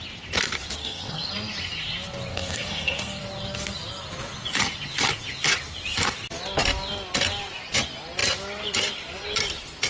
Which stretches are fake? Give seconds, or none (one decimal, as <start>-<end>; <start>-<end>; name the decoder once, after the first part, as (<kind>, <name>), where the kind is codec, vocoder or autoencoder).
0.8-1.3 (codec, SNAC); 2.3-3.2